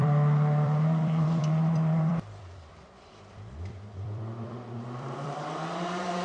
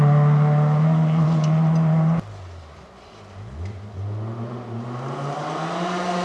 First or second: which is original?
second